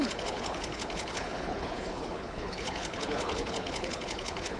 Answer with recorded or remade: remade